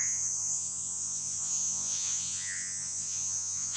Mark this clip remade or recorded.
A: remade